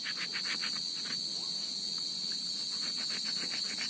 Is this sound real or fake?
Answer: real